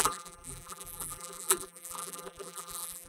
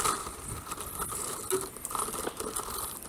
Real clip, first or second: second